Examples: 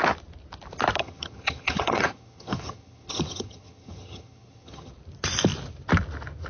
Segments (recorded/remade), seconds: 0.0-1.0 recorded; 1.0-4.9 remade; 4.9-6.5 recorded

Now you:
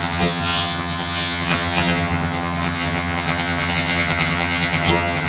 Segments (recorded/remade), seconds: 0.0-5.3 remade

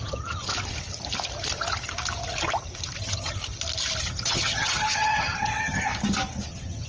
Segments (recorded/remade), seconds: 0.0-0.5 remade; 0.5-3.0 recorded; 3.0-3.4 remade; 3.4-4.0 recorded; 4.0-5.9 remade; 5.9-6.5 recorded; 6.5-6.9 remade

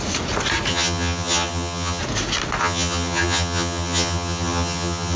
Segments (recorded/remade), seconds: 0.0-0.7 recorded; 0.7-2.0 remade; 2.0-2.6 recorded; 2.6-5.2 remade